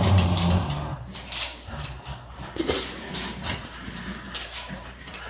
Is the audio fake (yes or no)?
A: yes